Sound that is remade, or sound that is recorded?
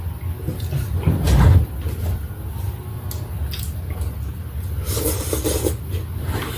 recorded